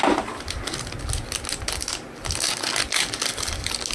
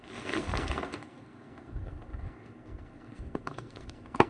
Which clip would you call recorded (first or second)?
first